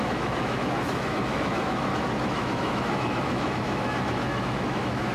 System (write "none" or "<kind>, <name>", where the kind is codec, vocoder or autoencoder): autoencoder, DAC-VAE